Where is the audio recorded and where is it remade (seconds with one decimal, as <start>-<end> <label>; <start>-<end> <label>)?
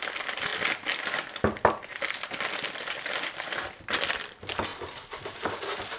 0.0-0.5 remade; 0.5-3.8 recorded; 3.8-6.0 remade